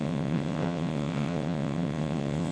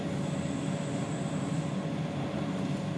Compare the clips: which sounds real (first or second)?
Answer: second